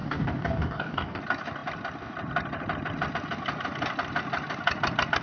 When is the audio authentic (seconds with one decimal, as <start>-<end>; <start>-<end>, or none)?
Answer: 1.2-5.2